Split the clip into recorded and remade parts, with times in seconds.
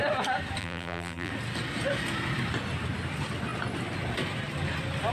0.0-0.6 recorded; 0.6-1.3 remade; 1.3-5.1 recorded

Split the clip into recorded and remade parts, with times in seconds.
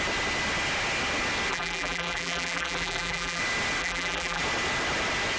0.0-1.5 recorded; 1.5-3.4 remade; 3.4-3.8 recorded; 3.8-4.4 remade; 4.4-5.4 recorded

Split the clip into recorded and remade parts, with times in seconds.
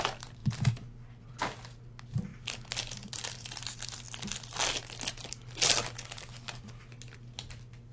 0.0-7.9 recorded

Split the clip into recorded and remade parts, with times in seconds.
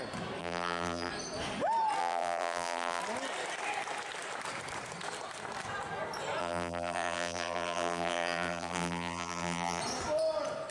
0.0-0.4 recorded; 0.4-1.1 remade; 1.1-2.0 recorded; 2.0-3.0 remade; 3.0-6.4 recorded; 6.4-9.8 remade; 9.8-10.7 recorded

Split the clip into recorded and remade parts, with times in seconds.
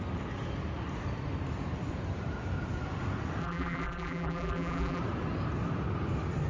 0.0-3.4 recorded; 3.4-5.0 remade; 5.0-6.5 recorded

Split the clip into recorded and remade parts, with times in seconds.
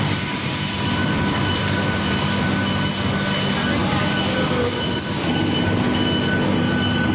0.0-0.4 recorded; 0.4-2.0 remade; 2.0-3.8 recorded; 3.8-5.1 remade; 5.1-7.1 recorded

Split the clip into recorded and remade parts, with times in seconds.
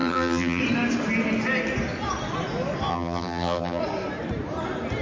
0.0-0.6 remade; 0.6-2.9 recorded; 2.9-3.8 remade; 3.8-5.0 recorded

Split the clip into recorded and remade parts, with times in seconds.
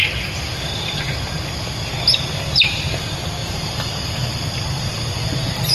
0.0-3.4 recorded; 3.4-5.7 remade